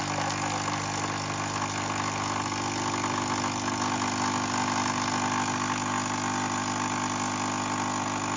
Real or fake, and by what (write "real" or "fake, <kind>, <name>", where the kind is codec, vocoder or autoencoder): real